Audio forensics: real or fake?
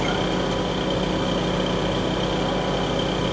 real